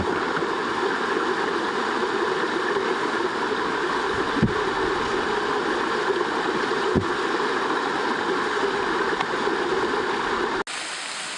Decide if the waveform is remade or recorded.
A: recorded